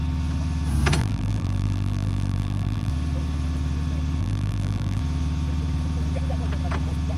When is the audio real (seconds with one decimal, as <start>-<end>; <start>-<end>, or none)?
0.0-1.0; 2.9-4.2; 5.0-7.2